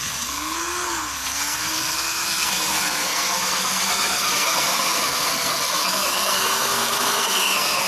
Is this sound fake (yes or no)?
yes